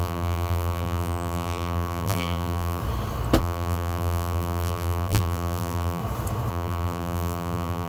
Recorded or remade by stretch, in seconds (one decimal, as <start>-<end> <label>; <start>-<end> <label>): 0.0-2.8 remade; 2.8-3.4 recorded; 3.4-6.0 remade; 6.0-6.5 recorded; 6.5-7.9 remade